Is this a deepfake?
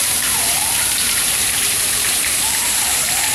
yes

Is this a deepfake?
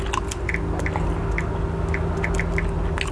no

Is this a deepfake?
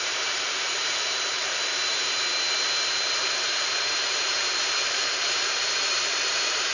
yes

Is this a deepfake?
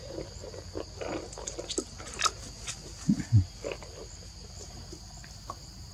no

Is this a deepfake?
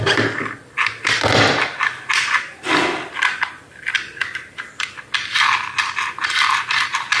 yes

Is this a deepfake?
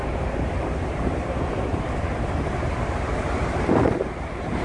yes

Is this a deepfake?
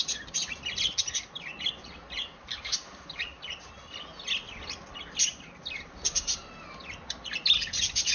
no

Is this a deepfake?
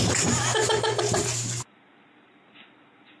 yes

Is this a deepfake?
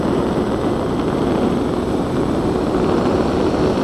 no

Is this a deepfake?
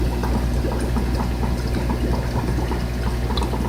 yes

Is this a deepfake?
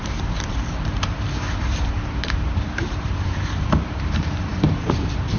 yes